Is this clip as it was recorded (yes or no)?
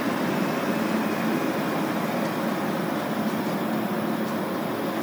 no